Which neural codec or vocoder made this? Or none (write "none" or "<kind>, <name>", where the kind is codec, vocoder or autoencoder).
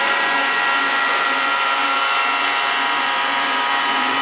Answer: vocoder, Vocos